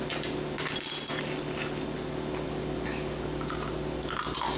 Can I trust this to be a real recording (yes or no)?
yes